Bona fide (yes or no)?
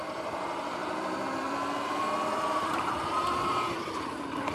no